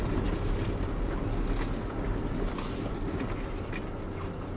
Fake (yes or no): no